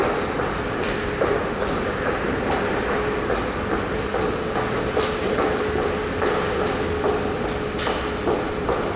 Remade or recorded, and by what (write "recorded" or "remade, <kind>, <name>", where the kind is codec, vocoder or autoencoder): recorded